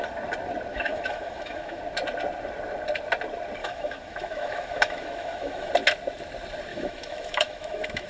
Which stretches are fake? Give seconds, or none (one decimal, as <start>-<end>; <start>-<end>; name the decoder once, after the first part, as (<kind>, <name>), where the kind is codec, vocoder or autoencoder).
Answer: 0.7-1.8 (autoencoder, DAC-VAE); 3.6-5.7; 6.7-8.1

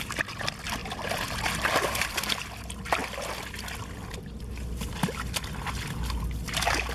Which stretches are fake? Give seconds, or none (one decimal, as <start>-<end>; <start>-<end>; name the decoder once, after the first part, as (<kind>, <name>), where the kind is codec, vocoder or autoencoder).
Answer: none

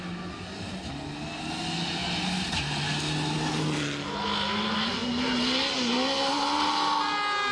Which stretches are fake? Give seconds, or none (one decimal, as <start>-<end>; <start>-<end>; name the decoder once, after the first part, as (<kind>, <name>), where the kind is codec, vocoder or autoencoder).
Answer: none

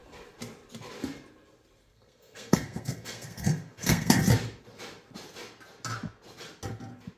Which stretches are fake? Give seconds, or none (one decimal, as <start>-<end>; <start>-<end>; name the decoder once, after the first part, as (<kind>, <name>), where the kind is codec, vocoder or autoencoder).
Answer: 1.9-4.2 (codec, SNAC)

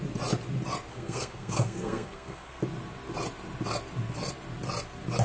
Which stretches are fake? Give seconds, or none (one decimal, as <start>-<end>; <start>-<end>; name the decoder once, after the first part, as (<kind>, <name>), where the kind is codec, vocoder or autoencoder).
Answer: 0.9-2.6 (codec, SNAC)

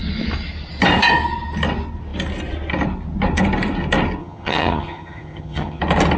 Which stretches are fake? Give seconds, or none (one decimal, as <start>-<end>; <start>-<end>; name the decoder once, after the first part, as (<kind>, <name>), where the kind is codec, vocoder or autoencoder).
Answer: 4.2-5.8 (vocoder, HiFi-GAN)

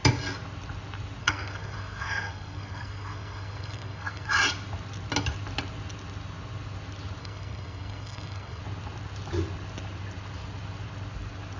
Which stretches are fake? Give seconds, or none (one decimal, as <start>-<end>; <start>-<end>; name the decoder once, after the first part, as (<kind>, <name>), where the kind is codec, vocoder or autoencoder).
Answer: 1.2-4.3 (codec, SNAC); 7.2-8.6